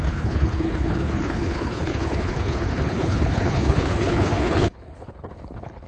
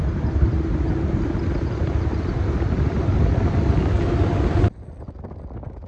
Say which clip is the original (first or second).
second